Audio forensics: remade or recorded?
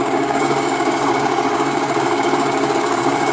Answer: remade